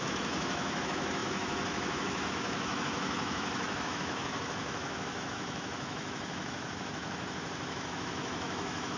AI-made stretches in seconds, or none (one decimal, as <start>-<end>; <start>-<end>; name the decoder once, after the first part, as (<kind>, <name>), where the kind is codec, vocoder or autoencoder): 0.0-9.0 (autoencoder, DAC-VAE)